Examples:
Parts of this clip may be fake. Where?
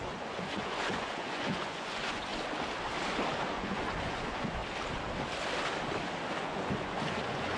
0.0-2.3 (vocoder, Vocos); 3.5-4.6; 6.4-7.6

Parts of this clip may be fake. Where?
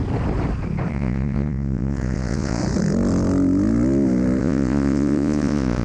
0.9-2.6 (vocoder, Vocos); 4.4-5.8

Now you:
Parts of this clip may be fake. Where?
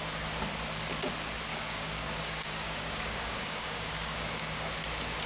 1.5-4.7 (codec, DAC)